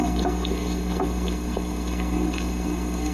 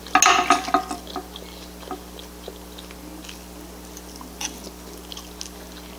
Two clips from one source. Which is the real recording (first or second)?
second